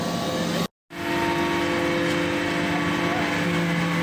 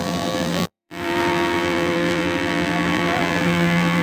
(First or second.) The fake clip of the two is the second